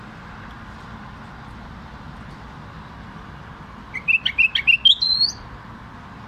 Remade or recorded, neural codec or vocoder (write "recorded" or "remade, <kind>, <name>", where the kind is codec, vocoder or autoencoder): recorded